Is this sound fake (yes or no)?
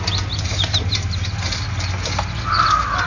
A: no